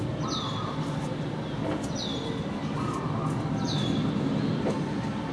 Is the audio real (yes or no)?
yes